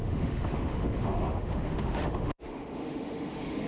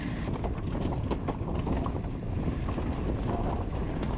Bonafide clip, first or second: second